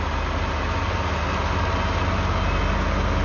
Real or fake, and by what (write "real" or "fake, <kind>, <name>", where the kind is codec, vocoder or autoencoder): real